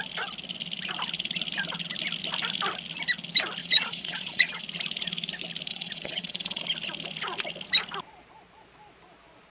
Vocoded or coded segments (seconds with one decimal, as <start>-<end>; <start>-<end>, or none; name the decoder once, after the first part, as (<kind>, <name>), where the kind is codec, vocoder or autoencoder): 3.6-4.6 (vocoder, Vocos); 5.7-6.6